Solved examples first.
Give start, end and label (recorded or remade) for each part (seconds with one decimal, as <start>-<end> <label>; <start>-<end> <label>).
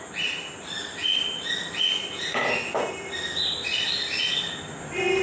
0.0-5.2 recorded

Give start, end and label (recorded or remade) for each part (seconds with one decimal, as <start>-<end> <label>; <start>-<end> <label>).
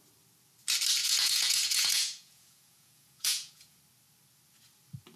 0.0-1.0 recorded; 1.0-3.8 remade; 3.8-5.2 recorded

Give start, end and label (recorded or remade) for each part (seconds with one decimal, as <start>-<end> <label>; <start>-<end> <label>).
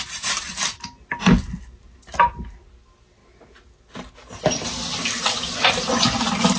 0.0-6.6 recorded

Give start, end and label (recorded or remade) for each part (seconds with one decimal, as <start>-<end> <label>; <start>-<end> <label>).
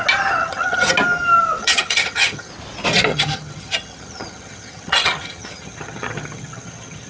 0.0-0.4 recorded; 0.4-0.9 remade; 0.9-1.6 recorded; 1.6-2.5 remade; 2.5-3.1 recorded; 3.1-7.1 remade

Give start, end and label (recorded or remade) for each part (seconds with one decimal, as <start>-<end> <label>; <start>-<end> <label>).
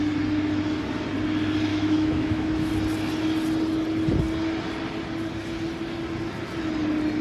0.0-1.7 recorded; 1.7-2.7 remade; 2.7-7.2 recorded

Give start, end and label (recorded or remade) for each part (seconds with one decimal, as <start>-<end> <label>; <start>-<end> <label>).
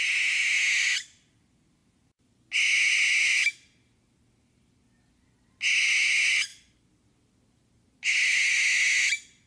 0.0-9.5 recorded